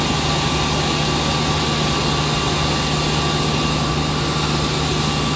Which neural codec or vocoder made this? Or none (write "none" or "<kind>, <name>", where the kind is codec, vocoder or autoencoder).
none